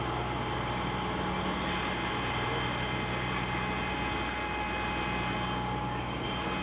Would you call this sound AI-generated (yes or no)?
no